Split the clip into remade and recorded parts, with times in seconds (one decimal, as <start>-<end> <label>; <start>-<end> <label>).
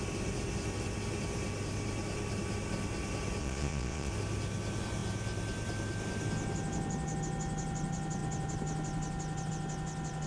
0.0-3.4 recorded; 3.4-4.1 remade; 4.1-10.3 recorded